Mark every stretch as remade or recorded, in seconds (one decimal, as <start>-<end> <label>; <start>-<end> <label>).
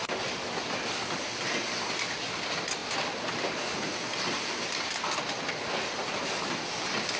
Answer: 0.0-7.2 recorded